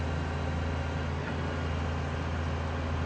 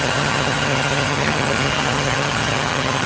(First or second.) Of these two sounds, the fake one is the second